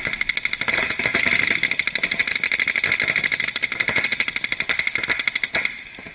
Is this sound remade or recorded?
recorded